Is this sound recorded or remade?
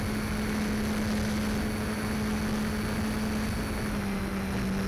recorded